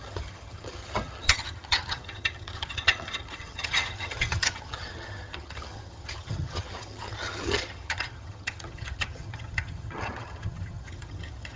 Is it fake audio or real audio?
fake